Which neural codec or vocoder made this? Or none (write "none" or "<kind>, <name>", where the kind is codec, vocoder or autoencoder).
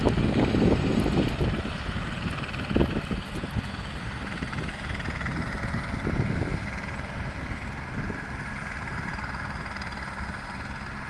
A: none